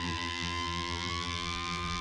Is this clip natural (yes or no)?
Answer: no